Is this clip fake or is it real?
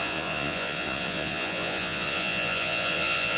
fake